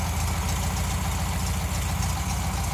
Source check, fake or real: real